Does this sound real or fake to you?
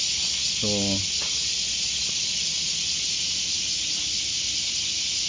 real